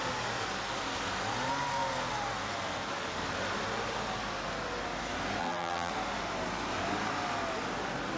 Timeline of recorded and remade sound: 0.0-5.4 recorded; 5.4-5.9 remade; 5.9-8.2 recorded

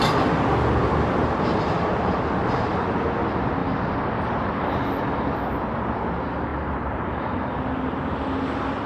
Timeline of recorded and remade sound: 0.0-0.8 recorded; 0.8-1.9 remade; 1.9-6.5 recorded; 6.5-7.7 remade; 7.7-8.9 recorded

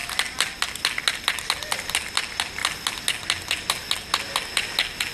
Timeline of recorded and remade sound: 0.0-5.1 recorded

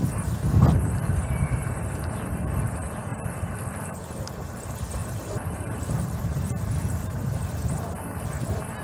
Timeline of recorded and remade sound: 0.0-3.1 recorded; 3.1-4.6 remade; 4.6-5.0 recorded; 5.0-7.4 remade; 7.4-8.8 recorded

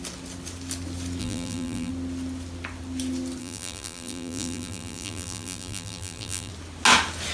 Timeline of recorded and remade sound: 0.0-1.2 recorded; 1.2-1.9 remade; 1.9-3.4 recorded; 3.4-6.5 remade; 6.5-7.3 recorded